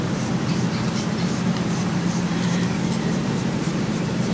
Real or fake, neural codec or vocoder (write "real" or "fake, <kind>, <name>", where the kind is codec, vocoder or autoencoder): fake, vocoder, BigVGAN v2